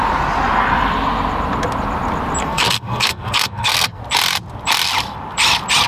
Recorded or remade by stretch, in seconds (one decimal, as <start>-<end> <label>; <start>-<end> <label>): 0.0-2.4 recorded; 2.4-4.0 remade; 4.0-5.9 recorded